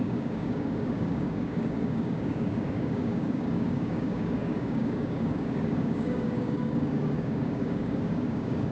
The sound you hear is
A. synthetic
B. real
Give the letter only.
A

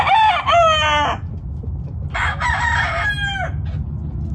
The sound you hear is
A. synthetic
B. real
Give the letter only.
B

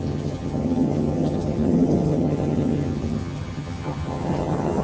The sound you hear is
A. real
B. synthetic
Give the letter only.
B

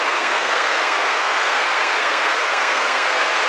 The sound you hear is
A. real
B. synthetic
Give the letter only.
B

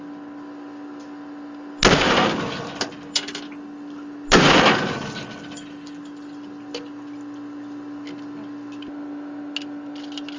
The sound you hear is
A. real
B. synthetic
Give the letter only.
A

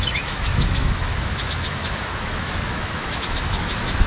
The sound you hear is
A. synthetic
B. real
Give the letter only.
A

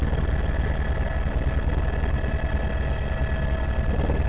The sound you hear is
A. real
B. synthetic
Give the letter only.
A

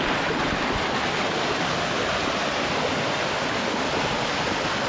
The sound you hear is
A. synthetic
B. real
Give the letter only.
B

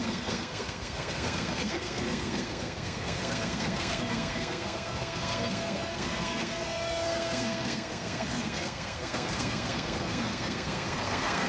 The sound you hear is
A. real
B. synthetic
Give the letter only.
B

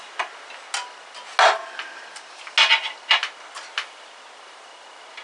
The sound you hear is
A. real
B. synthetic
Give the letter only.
A